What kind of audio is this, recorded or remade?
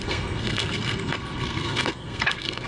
remade